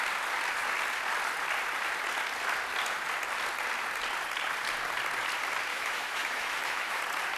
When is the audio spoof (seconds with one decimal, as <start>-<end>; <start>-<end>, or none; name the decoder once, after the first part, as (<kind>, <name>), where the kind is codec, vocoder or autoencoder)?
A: 5.7-7.0 (autoencoder, DAC-VAE)